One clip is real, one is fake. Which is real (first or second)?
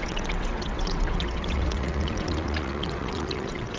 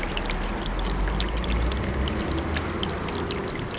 second